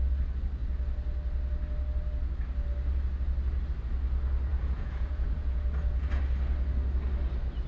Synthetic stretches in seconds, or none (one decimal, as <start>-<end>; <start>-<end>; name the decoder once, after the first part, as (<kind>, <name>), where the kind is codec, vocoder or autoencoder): 4.5-6.2 (vocoder, Vocos)